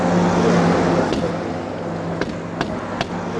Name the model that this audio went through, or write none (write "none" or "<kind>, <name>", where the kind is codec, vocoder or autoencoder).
none